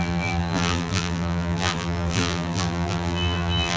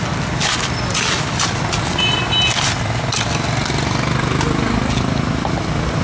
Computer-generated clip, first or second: first